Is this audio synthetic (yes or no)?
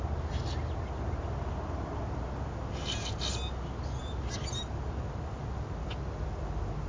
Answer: no